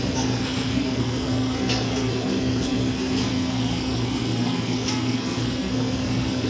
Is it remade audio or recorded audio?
remade